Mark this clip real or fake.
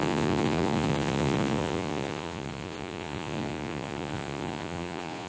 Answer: fake